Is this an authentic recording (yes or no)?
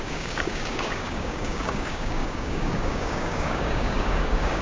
no